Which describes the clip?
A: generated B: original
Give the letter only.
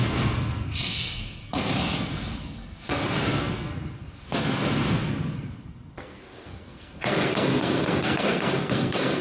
A